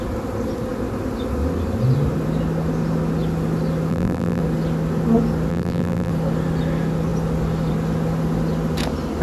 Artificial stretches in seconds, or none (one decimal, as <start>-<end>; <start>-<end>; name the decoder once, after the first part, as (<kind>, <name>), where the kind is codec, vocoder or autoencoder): 3.9-4.4 (vocoder, BigVGAN v2); 5.5-6.1